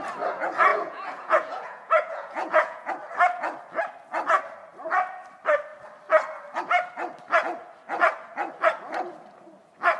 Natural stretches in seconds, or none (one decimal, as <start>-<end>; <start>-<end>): 0.0-0.7; 2.9-10.0

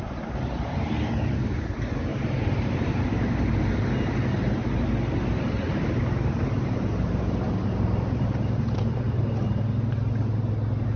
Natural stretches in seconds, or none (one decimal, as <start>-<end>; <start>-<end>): 0.0-2.1; 3.0-5.3; 9.2-11.0

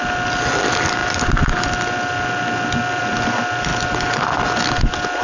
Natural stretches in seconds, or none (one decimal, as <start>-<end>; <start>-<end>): 0.0-5.2

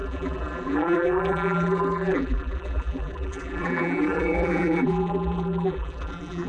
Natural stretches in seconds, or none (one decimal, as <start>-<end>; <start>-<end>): none

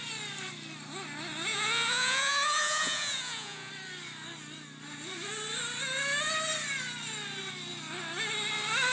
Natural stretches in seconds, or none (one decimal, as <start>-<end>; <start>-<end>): 0.0-1.5; 3.7-8.9

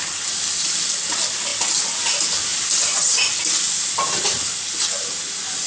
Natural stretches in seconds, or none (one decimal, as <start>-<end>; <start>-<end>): 0.0-5.7

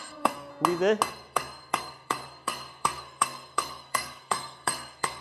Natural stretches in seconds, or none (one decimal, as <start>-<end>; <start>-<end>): 0.5-1.1